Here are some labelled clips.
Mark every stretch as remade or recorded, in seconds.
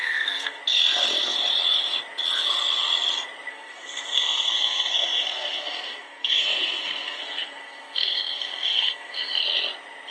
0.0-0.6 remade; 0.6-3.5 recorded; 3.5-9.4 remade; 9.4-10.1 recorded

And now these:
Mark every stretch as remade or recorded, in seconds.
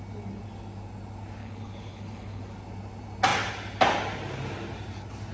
0.0-1.4 recorded; 1.4-2.4 remade; 2.4-5.3 recorded